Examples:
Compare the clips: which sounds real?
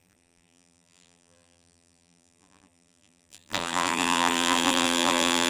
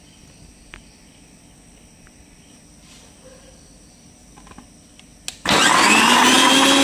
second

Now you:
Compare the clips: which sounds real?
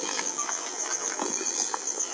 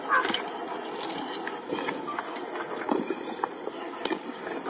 second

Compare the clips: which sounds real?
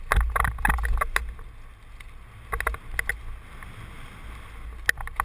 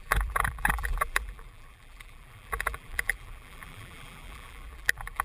first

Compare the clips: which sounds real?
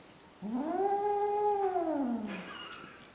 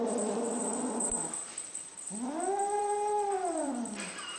first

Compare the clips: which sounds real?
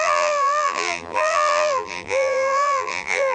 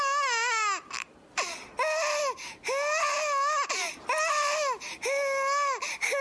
second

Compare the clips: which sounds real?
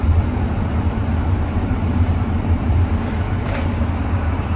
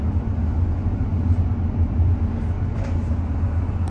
second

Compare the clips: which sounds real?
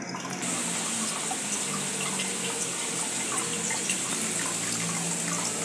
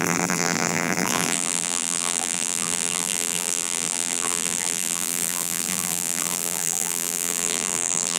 first